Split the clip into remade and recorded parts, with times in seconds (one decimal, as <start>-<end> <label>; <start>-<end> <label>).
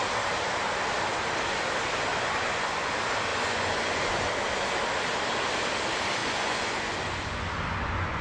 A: 0.0-2.1 recorded; 2.1-2.9 remade; 2.9-3.3 recorded; 3.3-4.3 remade; 4.3-6.2 recorded; 6.2-8.2 remade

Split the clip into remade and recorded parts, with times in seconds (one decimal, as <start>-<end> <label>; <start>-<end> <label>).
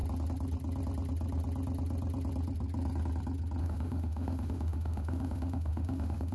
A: 0.0-3.6 recorded; 3.6-6.3 remade